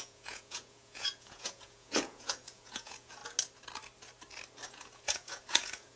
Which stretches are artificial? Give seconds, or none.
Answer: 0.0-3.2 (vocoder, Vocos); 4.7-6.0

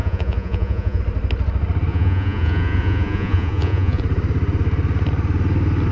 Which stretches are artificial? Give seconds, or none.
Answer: 0.0-1.0 (vocoder, Vocos); 1.9-4.0